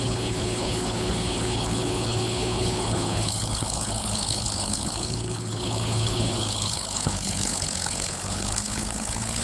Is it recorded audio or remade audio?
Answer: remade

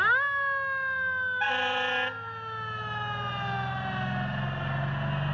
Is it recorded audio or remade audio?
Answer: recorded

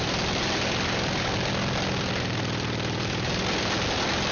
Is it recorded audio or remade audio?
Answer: recorded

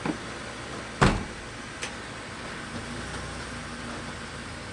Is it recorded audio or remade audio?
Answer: recorded